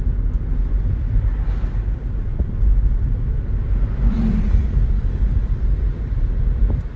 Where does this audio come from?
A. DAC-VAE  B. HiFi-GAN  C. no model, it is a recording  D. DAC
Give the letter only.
C